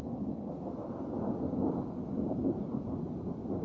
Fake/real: real